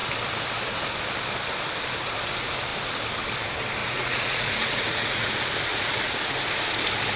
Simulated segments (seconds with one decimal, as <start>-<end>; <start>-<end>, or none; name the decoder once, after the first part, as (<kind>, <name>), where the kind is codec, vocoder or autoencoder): 3.8-5.3 (vocoder, Vocos); 5.7-6.3